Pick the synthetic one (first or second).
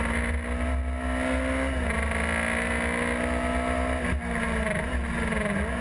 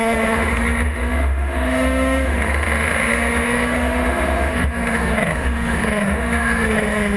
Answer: second